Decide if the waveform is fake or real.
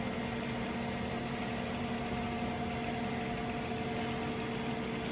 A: real